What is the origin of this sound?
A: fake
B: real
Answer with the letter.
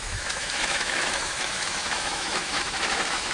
A